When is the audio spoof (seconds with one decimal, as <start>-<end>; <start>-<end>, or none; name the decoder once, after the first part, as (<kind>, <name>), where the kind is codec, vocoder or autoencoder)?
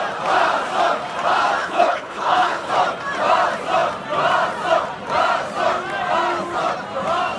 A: 1.6-2.7 (codec, HILCodec)